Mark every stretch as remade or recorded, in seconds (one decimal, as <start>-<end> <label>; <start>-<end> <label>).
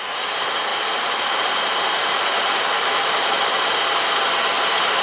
0.0-3.7 remade; 3.7-4.6 recorded; 4.6-5.0 remade